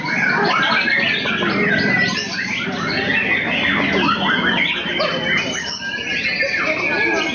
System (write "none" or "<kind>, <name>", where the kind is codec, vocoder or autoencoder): none